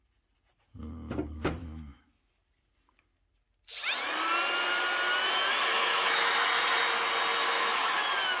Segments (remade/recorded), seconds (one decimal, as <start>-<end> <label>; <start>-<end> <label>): 0.0-1.6 recorded; 1.6-2.3 remade; 2.3-5.7 recorded; 5.7-6.4 remade; 6.4-7.4 recorded; 7.4-8.0 remade; 8.0-8.4 recorded